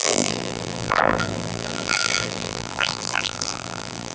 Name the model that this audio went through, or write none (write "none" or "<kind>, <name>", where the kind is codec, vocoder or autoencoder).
vocoder, BigVGAN v2